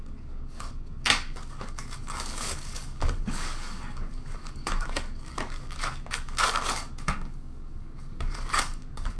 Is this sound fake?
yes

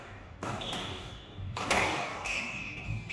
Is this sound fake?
yes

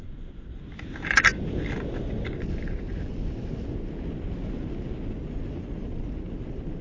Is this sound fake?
no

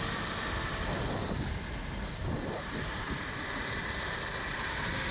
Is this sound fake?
no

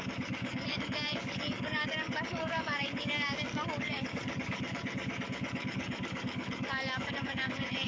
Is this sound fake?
yes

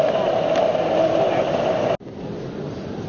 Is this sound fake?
no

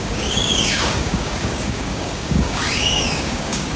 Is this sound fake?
yes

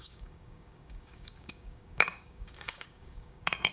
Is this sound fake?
yes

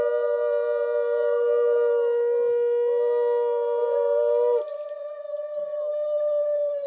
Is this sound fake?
no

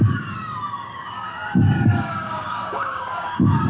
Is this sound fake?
yes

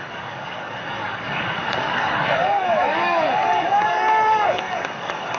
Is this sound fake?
yes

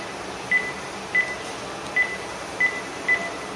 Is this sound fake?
no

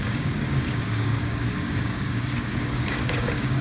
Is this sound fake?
yes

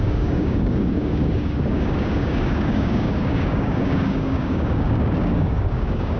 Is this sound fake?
yes